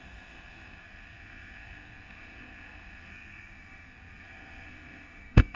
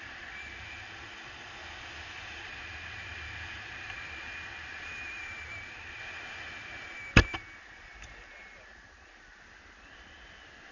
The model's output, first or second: first